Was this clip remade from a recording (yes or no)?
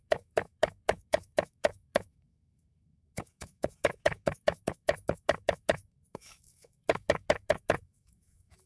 yes